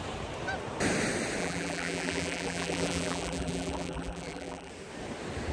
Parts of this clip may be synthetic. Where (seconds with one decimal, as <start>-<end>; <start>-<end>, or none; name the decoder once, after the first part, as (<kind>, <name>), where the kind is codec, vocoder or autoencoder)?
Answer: 1.4-4.7 (vocoder, BigVGAN v2)